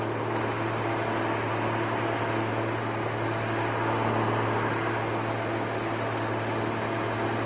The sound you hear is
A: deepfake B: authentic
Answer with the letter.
B